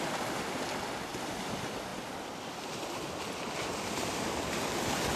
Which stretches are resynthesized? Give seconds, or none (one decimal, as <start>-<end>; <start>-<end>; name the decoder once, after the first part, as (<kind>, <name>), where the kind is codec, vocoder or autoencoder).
none